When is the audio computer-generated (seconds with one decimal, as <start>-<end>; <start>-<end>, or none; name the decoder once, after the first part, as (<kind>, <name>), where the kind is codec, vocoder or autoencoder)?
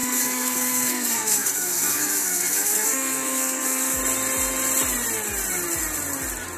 0.0-4.0 (codec, SNAC)